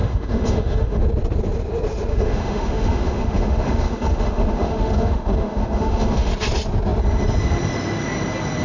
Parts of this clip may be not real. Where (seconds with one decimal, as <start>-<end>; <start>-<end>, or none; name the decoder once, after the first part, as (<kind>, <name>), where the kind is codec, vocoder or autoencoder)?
0.0-1.0 (autoencoder, DAC-VAE); 2.1-6.3